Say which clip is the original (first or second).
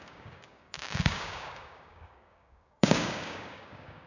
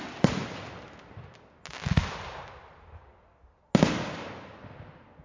second